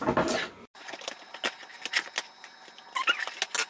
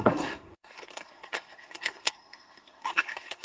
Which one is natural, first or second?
first